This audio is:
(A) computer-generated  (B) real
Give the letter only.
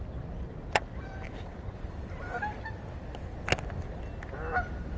B